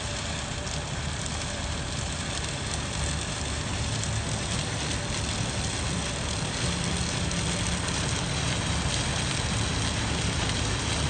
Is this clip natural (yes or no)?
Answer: yes